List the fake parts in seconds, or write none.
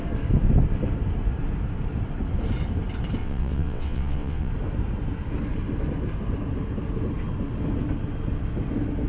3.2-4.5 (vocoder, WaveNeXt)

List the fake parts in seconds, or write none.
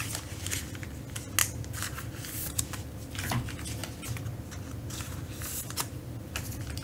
none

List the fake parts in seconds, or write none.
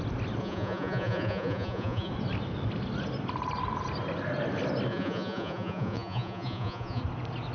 0.4-2.1 (vocoder, Vocos); 4.9-7.0